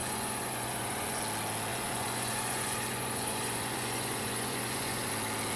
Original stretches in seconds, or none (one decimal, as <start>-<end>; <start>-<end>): 1.2-1.7; 5.1-5.6